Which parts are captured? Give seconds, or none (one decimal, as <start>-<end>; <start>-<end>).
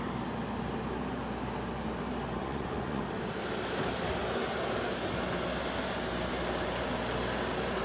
0.0-2.4; 3.0-7.8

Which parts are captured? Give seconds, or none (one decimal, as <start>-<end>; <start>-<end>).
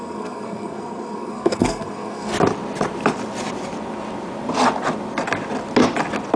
2.3-6.4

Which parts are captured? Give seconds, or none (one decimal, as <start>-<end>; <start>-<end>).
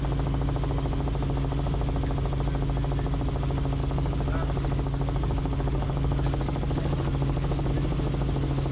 0.0-3.8; 7.7-8.7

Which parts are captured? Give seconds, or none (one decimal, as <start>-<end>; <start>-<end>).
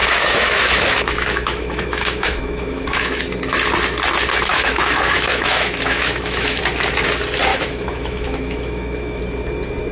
3.2-4.5; 6.6-7.5; 9.2-9.9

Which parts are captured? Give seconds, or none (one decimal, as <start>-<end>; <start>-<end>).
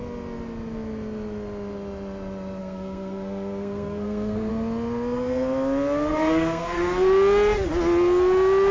0.0-2.6; 4.5-6.1; 6.8-8.7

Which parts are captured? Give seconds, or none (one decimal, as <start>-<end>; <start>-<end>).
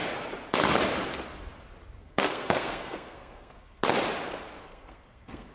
0.0-2.0; 3.8-4.6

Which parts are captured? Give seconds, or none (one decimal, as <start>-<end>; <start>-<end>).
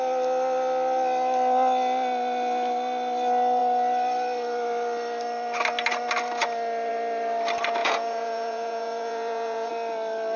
0.0-7.8; 9.7-10.4